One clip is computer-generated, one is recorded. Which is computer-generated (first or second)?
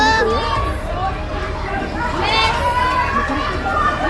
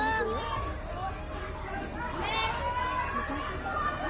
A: first